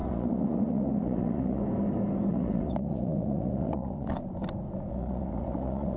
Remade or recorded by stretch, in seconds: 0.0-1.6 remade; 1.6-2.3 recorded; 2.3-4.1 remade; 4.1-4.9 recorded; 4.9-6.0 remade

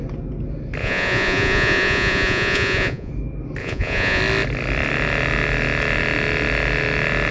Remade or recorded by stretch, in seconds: 0.0-0.8 recorded; 0.8-3.1 remade; 3.1-3.6 recorded; 3.6-4.2 remade; 4.2-7.3 recorded

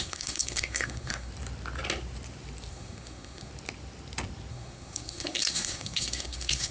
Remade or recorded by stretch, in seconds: 0.0-1.3 remade; 1.3-2.7 recorded; 2.7-3.5 remade; 3.5-4.5 recorded; 4.5-6.7 remade

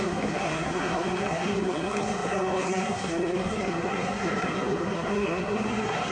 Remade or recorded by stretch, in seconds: 0.0-6.1 remade

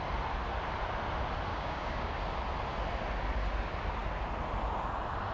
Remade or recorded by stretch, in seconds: 0.0-1.5 recorded; 1.5-2.2 remade; 2.2-5.3 recorded

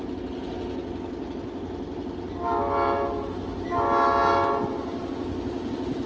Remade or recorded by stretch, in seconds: 0.0-6.1 recorded

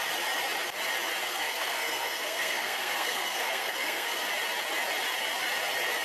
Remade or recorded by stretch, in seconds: 0.0-1.2 recorded; 1.2-4.2 remade; 4.2-6.0 recorded